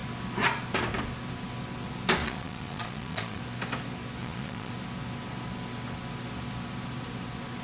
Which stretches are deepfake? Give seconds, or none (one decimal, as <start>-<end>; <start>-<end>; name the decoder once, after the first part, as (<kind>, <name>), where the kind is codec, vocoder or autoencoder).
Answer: 2.2-3.4 (vocoder, Vocos); 4.2-4.7